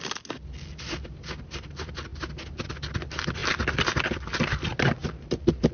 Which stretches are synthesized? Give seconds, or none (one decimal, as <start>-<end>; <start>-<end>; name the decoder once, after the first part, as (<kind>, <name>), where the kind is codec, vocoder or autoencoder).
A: none